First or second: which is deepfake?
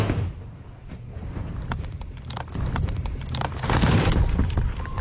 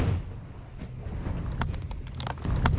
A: first